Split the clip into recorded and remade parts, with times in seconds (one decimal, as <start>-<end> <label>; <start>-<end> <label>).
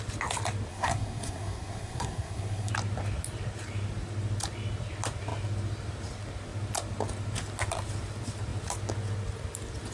0.0-0.7 recorded; 0.7-2.7 remade; 2.7-9.9 recorded